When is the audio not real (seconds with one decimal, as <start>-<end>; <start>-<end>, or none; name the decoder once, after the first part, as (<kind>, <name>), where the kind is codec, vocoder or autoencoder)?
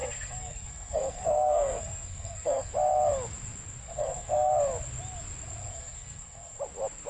0.0-2.7 (codec, SNAC); 3.8-4.5; 5.6-6.6